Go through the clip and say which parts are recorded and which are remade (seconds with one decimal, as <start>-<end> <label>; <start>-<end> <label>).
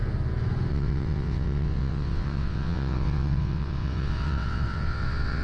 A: 0.0-0.7 recorded; 0.7-5.4 remade